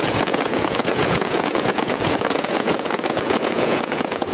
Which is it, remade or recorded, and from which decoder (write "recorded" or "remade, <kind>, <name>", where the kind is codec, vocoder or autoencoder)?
remade, vocoder, Vocos